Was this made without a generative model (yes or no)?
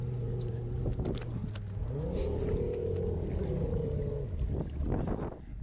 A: yes